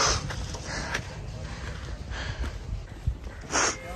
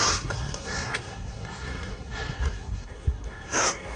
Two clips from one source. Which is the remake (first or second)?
second